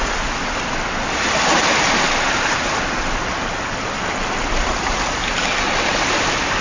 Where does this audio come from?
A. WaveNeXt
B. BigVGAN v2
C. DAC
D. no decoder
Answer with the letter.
D